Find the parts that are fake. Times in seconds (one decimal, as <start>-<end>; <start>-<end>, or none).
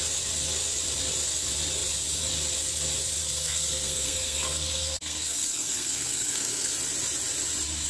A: 3.2-6.7